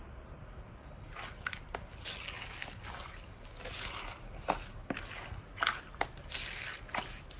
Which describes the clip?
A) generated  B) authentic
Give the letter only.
B